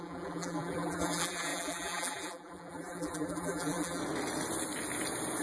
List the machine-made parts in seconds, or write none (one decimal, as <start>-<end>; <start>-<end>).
0.0-4.0